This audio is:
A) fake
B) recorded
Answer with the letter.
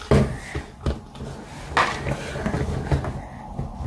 B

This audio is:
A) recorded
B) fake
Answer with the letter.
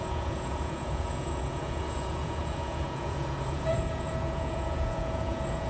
B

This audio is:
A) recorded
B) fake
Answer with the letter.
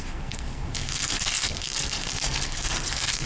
B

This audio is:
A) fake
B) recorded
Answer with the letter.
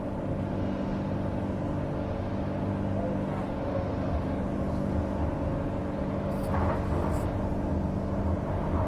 B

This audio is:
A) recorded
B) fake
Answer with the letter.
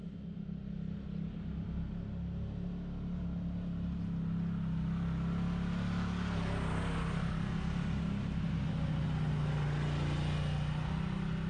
A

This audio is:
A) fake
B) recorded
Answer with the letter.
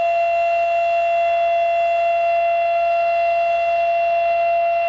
B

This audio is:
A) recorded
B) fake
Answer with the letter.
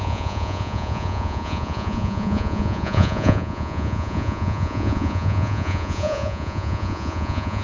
B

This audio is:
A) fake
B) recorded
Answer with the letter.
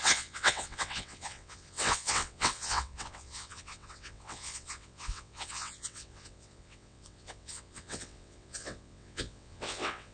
A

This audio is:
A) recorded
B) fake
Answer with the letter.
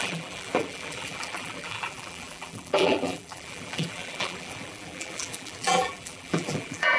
B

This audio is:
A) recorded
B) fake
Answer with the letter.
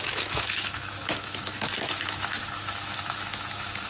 B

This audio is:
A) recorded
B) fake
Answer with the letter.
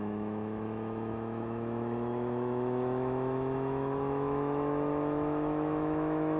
B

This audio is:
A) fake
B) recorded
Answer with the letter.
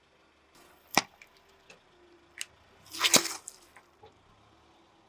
B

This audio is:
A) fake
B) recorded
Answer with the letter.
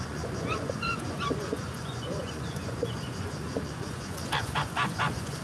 A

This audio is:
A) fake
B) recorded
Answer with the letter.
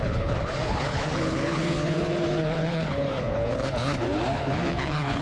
A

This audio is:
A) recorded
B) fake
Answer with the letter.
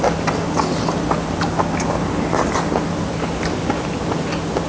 A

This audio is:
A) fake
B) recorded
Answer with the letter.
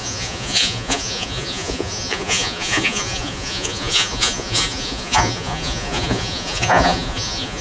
A